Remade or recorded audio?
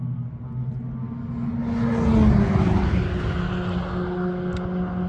recorded